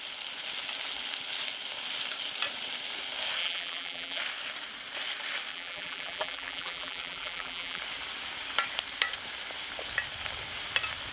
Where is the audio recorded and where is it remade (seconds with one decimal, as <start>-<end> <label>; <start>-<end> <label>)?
0.0-3.4 recorded; 3.4-4.2 remade; 4.2-5.5 recorded; 5.5-7.8 remade; 7.8-11.1 recorded